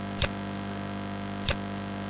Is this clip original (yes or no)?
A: yes